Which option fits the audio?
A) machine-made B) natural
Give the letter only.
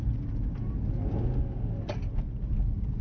B